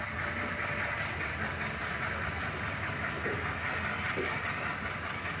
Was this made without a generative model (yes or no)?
yes